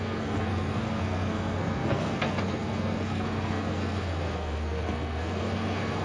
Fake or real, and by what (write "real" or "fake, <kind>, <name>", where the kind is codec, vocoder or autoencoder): fake, codec, SNAC